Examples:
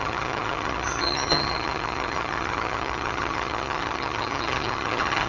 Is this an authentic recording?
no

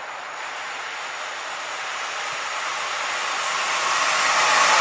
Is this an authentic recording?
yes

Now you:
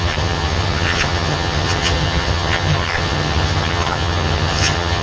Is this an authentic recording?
no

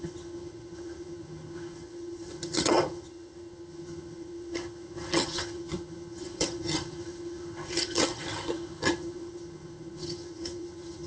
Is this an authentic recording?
no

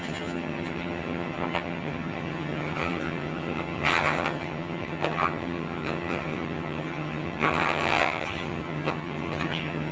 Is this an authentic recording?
no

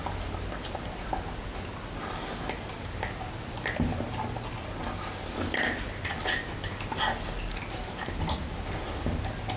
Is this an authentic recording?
yes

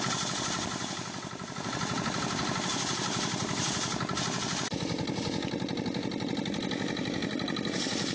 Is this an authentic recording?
yes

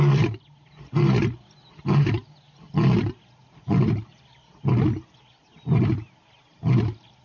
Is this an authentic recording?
yes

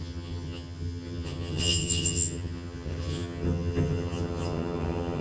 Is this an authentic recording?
no